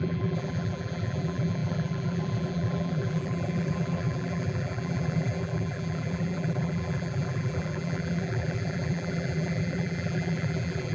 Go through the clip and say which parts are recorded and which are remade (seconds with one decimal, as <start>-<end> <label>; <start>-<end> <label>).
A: 0.0-10.9 remade